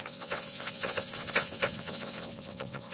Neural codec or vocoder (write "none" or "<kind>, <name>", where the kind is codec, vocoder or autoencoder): vocoder, WaveNeXt